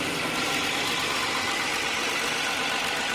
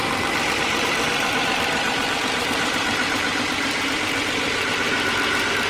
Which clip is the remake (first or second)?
second